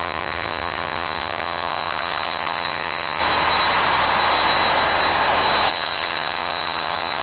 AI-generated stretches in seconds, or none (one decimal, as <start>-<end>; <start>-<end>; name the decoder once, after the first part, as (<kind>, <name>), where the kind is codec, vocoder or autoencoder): 0.0-3.2 (vocoder, HiFi-GAN); 5.7-7.2